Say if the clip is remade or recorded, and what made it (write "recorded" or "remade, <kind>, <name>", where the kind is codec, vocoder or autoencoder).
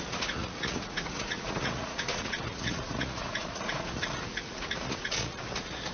remade, vocoder, Vocos